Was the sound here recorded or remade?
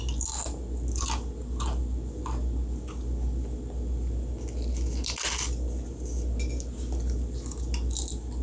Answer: recorded